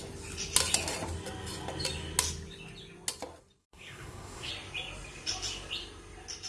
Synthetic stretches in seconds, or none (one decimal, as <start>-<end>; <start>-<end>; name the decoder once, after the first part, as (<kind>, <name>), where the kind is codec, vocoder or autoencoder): 3.6-4.5 (codec, SNAC)